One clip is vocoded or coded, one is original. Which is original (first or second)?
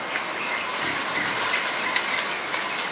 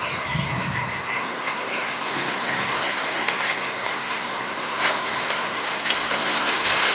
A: first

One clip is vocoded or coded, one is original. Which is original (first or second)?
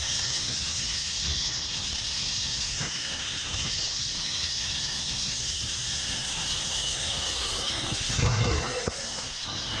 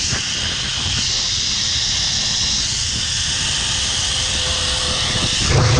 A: second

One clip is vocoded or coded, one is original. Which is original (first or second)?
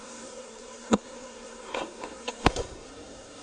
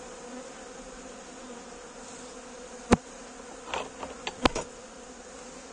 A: second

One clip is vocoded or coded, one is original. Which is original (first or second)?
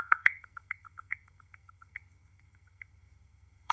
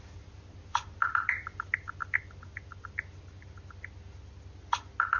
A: second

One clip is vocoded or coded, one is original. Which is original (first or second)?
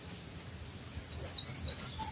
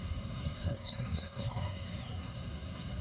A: first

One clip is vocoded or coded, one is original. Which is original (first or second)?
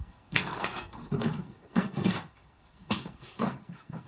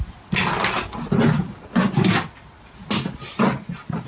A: second